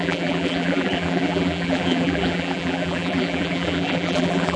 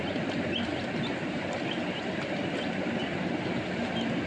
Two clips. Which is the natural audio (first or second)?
second